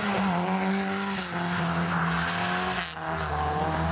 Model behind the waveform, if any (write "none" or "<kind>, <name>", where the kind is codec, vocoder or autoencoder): none